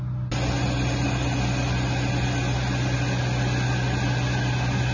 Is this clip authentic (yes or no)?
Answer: yes